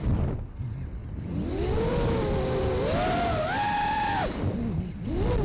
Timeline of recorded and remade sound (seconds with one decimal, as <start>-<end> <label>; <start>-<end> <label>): 0.0-5.4 recorded